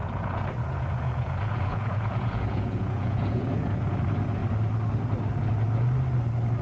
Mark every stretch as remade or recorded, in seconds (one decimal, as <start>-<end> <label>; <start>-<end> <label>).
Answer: 0.0-4.0 remade; 4.0-6.6 recorded